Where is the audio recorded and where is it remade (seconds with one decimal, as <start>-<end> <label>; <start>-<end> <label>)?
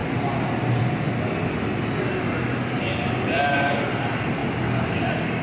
0.0-5.4 recorded